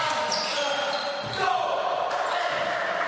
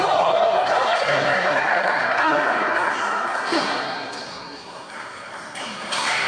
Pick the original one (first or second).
first